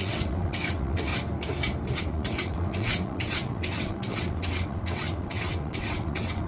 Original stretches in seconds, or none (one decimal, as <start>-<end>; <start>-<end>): 1.1-2.0